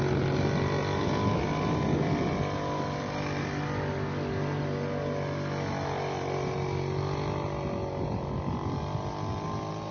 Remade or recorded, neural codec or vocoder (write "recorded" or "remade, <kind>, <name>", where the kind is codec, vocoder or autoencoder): recorded